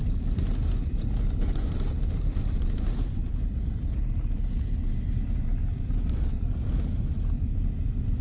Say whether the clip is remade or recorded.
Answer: recorded